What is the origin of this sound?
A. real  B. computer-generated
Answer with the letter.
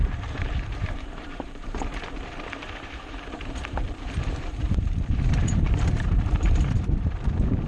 B